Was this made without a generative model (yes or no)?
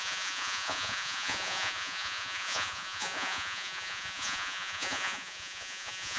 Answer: no